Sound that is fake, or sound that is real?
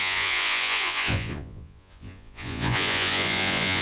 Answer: fake